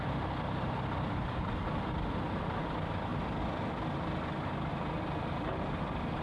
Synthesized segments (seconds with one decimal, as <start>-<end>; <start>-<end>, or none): none